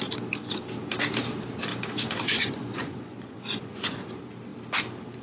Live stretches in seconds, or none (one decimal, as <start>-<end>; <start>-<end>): 0.0-1.7; 4.1-5.2